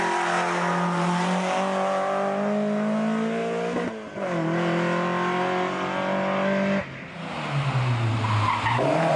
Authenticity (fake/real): real